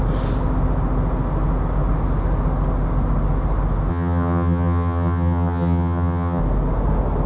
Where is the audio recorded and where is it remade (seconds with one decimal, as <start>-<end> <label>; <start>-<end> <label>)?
0.0-3.9 recorded; 3.9-6.4 remade; 6.4-7.3 recorded

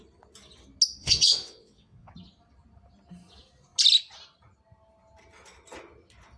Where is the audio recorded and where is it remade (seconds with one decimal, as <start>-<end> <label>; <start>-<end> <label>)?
0.0-1.0 recorded; 1.0-2.1 remade; 2.1-6.4 recorded

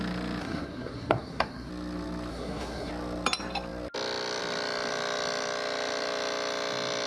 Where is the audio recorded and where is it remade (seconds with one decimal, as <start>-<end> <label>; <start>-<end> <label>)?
0.0-0.4 recorded; 0.4-1.7 remade; 1.7-2.3 recorded; 2.3-2.9 remade; 2.9-7.1 recorded

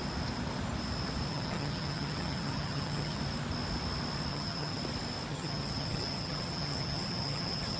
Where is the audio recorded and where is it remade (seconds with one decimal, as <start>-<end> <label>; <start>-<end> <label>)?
0.0-1.3 recorded; 1.3-3.2 remade; 3.2-4.3 recorded; 4.3-4.8 remade; 4.8-5.3 recorded; 5.3-7.8 remade

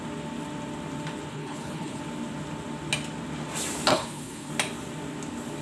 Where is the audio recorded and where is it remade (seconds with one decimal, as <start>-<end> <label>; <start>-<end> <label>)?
0.0-1.3 recorded; 1.3-2.0 remade; 2.0-3.9 recorded; 3.9-4.5 remade; 4.5-5.6 recorded